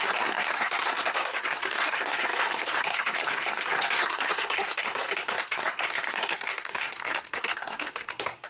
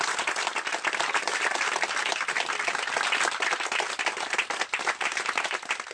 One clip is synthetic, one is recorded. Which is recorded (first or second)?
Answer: second